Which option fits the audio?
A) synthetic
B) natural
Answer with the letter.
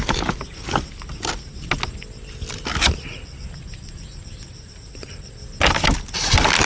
B